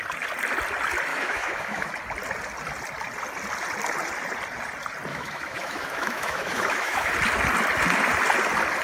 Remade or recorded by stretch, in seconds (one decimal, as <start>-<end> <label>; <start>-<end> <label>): 0.0-1.1 recorded; 1.1-1.9 remade; 1.9-5.1 recorded; 5.1-7.1 remade; 7.1-8.8 recorded